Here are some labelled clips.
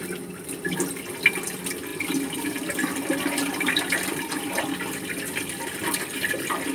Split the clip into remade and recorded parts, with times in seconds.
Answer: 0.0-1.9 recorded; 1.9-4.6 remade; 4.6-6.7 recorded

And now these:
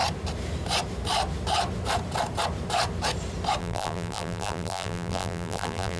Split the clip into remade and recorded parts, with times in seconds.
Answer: 0.0-3.6 recorded; 3.6-6.0 remade

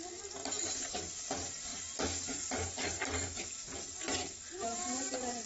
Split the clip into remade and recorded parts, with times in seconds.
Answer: 0.0-0.4 recorded; 0.4-0.9 remade; 0.9-1.7 recorded; 1.7-3.5 remade; 3.5-4.6 recorded; 4.6-5.1 remade; 5.1-5.5 recorded